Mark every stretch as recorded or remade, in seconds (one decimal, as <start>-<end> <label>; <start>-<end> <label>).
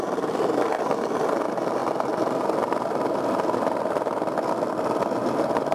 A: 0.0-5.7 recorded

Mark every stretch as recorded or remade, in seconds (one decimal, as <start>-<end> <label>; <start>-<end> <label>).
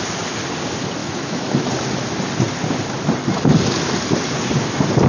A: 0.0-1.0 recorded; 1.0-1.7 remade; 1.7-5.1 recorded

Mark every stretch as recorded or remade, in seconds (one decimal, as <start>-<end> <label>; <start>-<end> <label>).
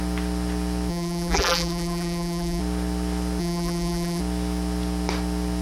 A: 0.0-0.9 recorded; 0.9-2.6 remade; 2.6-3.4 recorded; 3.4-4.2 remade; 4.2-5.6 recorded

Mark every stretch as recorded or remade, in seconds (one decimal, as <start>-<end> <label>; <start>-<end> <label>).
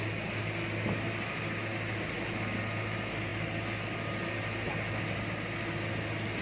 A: 0.0-6.4 recorded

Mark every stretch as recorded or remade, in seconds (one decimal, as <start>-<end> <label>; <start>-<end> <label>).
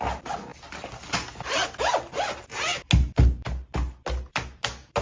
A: 0.0-5.0 recorded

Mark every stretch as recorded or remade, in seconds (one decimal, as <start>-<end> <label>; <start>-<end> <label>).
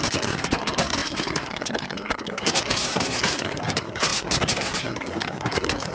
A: 0.0-5.9 remade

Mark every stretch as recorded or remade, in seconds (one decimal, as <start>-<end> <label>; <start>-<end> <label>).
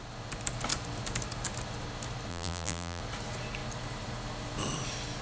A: 0.0-2.3 recorded; 2.3-3.0 remade; 3.0-5.2 recorded